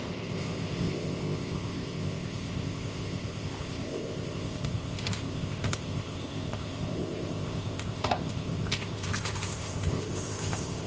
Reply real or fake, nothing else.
fake